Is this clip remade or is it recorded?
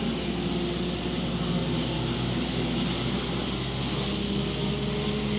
recorded